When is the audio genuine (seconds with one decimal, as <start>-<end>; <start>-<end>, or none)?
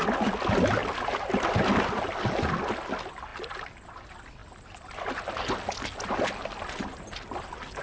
0.0-7.8